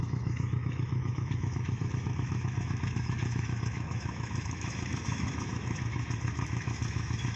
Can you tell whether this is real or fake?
fake